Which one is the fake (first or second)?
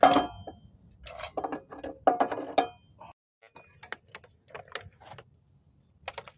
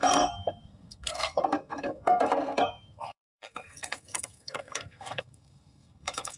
second